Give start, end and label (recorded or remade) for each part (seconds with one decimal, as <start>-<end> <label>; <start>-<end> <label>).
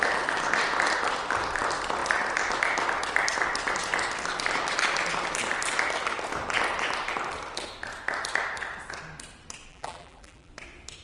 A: 0.0-9.7 recorded; 9.7-10.5 remade; 10.5-11.0 recorded